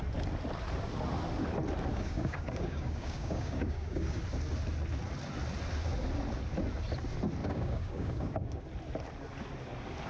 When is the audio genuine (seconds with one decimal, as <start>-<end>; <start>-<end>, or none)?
0.0-1.9; 4.2-7.4; 8.6-10.1